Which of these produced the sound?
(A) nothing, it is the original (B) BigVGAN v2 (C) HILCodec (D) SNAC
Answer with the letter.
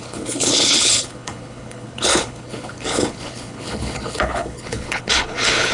C